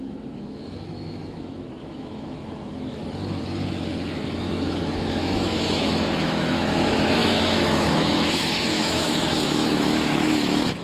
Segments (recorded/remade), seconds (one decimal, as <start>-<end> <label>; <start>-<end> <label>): 0.0-3.0 remade; 3.0-4.4 recorded; 4.4-10.8 remade